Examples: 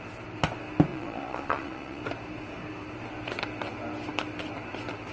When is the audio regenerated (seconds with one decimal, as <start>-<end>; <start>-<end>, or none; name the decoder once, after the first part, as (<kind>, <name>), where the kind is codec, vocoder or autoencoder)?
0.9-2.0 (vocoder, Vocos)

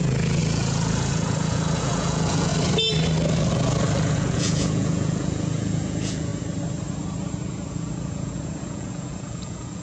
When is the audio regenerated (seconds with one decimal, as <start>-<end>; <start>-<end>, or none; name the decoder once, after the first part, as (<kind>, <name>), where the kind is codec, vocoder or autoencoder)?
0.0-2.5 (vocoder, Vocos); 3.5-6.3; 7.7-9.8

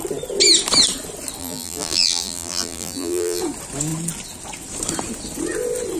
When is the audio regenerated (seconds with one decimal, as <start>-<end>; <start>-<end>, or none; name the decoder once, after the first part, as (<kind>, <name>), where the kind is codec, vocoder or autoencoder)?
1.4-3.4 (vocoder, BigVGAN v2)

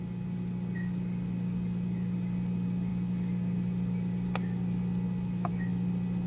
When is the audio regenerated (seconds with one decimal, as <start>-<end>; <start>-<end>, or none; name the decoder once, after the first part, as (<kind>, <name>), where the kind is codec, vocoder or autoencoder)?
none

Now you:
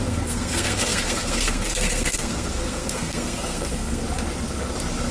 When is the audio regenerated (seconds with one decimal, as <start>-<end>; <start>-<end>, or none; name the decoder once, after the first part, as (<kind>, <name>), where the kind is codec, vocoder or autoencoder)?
0.0-4.0 (codec, SNAC)

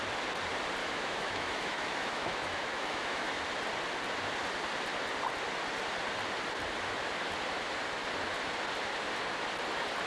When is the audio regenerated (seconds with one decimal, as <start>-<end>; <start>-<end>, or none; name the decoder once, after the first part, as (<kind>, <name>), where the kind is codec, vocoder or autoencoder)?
0.8-3.4 (autoencoder, DAC-VAE)

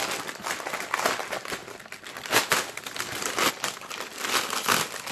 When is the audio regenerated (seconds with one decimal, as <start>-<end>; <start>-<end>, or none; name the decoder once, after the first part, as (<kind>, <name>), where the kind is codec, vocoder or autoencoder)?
1.6-3.5 (vocoder, BigVGAN v2)

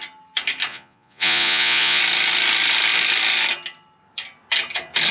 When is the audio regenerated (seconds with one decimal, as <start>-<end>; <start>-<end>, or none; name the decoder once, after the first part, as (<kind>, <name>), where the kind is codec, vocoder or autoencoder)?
0.7-2.0 (vocoder, Vocos)